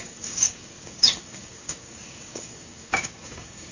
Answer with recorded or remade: remade